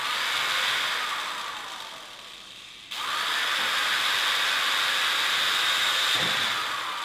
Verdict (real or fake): real